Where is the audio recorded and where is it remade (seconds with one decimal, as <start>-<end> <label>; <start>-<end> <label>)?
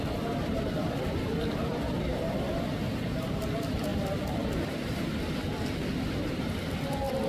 0.0-7.3 remade